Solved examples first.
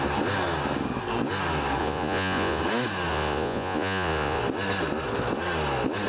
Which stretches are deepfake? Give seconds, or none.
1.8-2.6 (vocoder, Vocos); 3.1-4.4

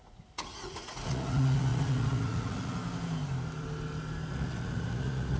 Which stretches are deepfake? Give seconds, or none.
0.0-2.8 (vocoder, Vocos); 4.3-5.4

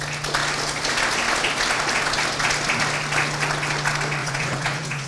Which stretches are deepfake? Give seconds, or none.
4.2-5.1 (vocoder, Vocos)